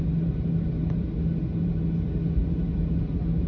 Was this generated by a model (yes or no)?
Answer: no